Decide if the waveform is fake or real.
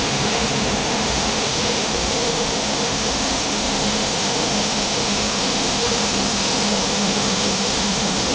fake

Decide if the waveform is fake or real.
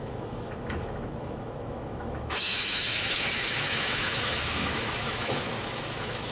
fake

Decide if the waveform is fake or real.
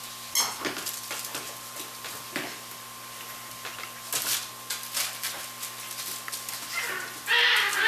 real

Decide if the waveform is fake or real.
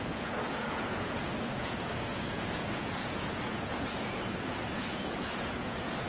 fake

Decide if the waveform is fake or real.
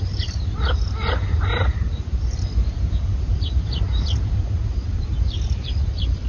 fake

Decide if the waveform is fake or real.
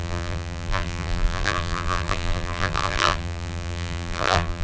fake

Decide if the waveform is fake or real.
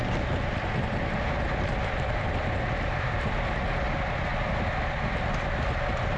real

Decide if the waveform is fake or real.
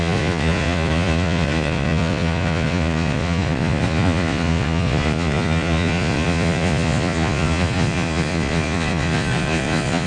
fake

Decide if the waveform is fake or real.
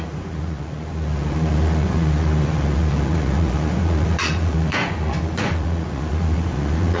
fake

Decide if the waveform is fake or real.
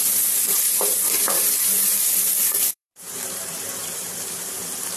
fake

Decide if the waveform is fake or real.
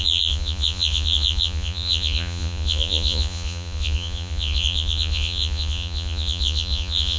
fake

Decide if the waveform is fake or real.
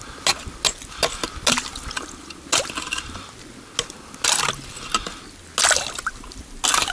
real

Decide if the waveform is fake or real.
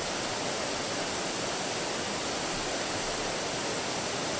real